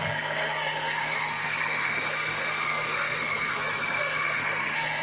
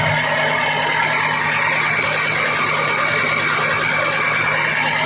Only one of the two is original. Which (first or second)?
second